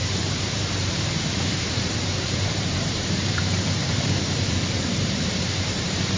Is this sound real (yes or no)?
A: no